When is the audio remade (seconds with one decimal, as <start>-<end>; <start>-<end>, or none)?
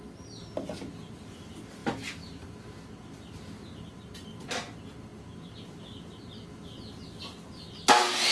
none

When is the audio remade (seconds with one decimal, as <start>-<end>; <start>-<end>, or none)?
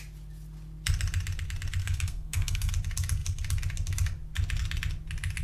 1.8-2.7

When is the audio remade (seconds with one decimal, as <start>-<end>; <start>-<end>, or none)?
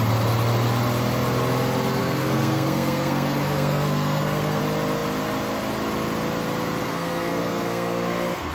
2.0-4.6; 6.8-8.5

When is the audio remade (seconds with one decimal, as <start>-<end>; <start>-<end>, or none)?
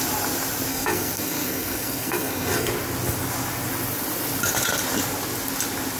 0.7-2.7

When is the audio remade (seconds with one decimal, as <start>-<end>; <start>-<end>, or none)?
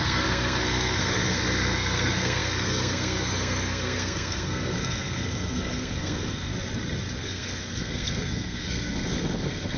0.0-6.5; 7.2-9.8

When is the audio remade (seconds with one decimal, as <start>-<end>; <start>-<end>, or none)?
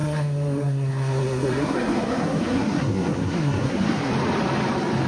0.0-4.1